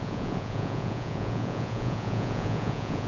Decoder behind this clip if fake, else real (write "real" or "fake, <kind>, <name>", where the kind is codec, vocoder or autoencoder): fake, vocoder, Vocos